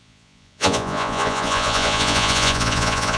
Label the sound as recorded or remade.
remade